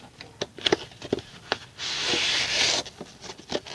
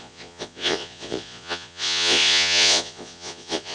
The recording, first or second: first